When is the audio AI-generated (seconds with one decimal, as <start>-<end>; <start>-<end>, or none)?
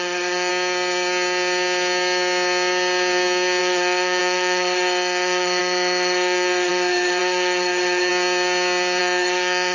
0.0-0.5; 3.6-8.1; 9.0-9.7